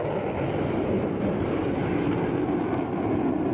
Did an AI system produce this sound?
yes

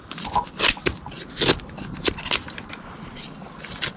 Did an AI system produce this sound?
no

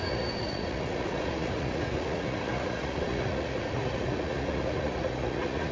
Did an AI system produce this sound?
yes